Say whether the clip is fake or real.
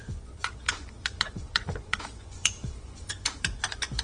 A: fake